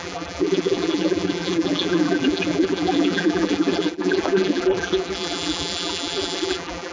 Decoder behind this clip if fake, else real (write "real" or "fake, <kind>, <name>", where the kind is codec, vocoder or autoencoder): fake, vocoder, BigVGAN v2